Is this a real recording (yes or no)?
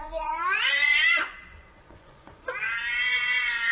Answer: no